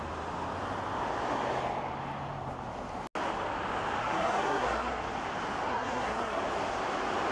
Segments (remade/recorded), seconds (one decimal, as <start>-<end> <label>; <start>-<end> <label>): 0.0-4.0 recorded; 4.0-5.0 remade; 5.0-5.7 recorded; 5.7-6.4 remade; 6.4-7.3 recorded